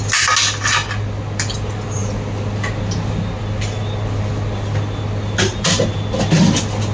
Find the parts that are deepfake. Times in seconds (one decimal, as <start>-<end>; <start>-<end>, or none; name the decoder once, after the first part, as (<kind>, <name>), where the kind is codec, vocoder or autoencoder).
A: none